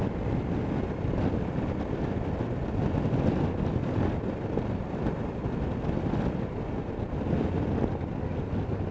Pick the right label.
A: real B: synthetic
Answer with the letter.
A